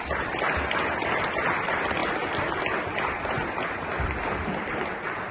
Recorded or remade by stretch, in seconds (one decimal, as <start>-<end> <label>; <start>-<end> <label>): 0.0-5.3 recorded